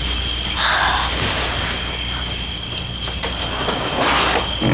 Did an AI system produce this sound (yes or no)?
no